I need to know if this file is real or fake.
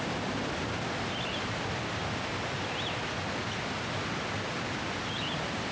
real